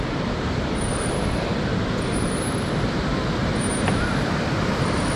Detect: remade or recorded recorded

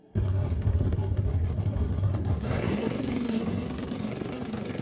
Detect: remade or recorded remade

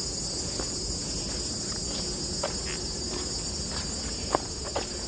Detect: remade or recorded recorded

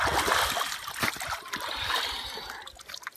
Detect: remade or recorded recorded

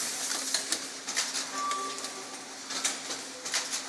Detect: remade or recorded recorded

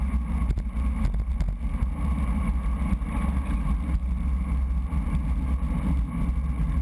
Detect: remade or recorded recorded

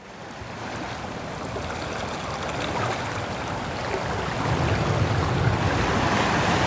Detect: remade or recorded recorded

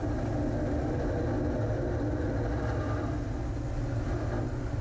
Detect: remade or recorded recorded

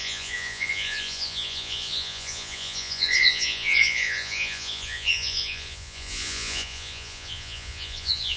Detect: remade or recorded remade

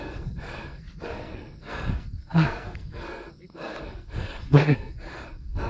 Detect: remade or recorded remade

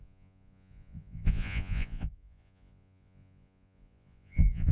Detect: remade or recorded remade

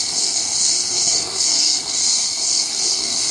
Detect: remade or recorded remade